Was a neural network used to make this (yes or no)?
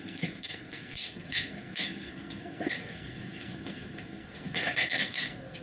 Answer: yes